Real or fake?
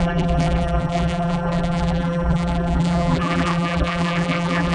fake